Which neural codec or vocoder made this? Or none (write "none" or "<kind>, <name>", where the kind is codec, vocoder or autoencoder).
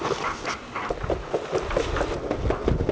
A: none